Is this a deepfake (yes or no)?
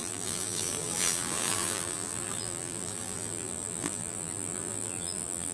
yes